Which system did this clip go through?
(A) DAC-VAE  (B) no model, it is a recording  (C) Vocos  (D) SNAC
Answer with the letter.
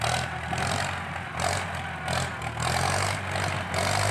B